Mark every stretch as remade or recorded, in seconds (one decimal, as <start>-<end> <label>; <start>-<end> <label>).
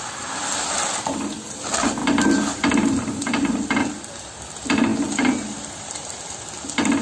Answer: 0.0-2.0 recorded; 2.0-3.9 remade; 3.9-4.9 recorded; 4.9-6.2 remade; 6.2-7.0 recorded